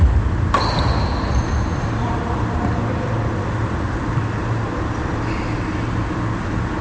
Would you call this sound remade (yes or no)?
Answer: no